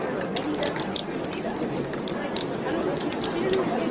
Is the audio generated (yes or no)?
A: no